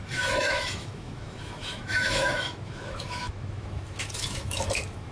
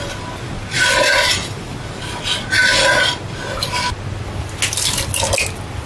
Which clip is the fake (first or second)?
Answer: first